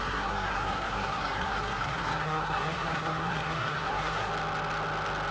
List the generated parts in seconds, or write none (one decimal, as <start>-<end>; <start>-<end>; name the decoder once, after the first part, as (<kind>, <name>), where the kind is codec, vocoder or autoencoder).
0.0-4.3 (codec, SNAC)

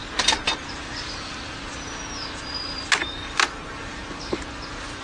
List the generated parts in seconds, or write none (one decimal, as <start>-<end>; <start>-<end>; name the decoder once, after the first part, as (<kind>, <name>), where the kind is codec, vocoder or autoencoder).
none

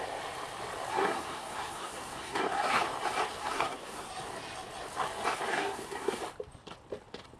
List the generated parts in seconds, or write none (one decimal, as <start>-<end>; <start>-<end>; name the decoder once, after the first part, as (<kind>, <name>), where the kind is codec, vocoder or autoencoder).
0.9-2.8 (codec, SNAC); 3.4-4.1; 5.5-6.2

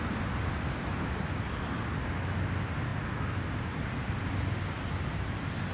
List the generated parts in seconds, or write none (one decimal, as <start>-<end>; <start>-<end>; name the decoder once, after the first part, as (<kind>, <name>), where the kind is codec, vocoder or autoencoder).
none

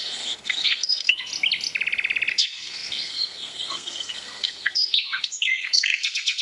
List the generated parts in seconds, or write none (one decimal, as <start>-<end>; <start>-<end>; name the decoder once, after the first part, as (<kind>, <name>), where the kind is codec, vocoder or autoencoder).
0.0-1.3 (codec, SNAC); 2.3-6.4

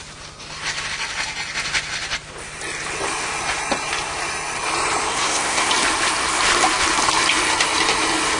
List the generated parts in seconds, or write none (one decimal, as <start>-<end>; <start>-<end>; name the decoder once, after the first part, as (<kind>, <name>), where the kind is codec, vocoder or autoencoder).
5.1-5.7 (codec, SNAC)